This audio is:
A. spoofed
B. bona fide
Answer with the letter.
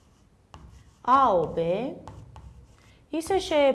B